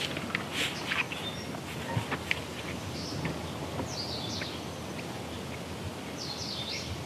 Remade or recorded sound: recorded